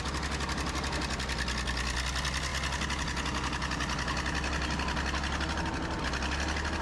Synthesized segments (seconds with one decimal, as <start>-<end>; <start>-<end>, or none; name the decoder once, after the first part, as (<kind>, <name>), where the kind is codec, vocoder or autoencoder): none